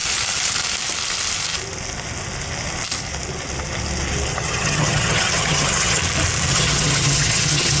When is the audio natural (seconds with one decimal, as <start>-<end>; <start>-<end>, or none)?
0.0-4.3; 6.0-6.5